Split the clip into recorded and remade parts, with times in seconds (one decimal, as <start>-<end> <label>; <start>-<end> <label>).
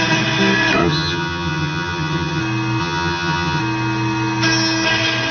0.0-0.8 recorded; 0.8-2.4 remade; 2.4-2.8 recorded; 2.8-3.6 remade; 3.6-5.3 recorded